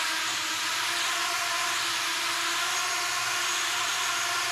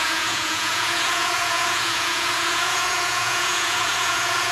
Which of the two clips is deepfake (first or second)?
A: second